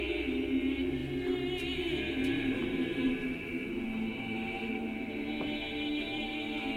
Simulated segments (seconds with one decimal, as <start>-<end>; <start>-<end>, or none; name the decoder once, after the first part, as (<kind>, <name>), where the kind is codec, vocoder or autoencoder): 2.2-6.3 (vocoder, BigVGAN v2)

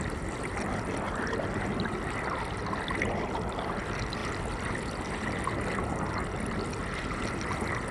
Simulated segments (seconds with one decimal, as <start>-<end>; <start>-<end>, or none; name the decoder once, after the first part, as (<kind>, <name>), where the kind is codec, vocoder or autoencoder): none

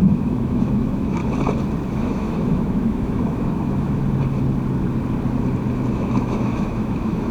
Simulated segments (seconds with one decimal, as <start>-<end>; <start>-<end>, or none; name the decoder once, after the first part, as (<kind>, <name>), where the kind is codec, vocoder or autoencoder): 0.0-1.2 (autoencoder, DAC-VAE); 1.9-4.0; 5.9-7.3

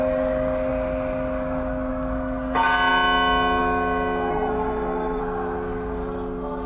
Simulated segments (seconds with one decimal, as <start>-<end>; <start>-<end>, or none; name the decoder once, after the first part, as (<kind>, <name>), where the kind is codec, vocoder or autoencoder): 4.3-5.2 (codec, SNAC)

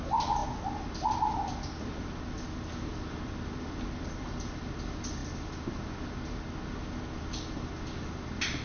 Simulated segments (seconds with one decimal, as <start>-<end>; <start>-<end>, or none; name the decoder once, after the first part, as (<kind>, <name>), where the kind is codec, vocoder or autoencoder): none

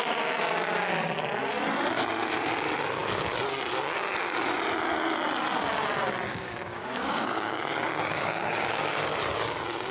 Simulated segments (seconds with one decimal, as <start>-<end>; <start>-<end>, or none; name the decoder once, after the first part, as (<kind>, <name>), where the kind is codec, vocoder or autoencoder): 6.3-8.8 (codec, DAC)

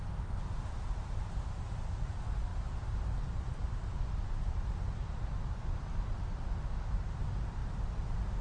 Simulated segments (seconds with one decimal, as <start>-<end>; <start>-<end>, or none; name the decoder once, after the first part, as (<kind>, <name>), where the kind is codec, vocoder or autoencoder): none